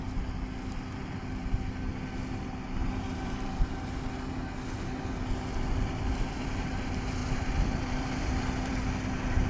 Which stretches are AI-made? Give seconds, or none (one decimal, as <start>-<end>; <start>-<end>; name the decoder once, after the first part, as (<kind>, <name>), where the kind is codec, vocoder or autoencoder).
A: 2.8-3.6 (vocoder, BigVGAN v2); 5.9-6.7; 7.2-8.9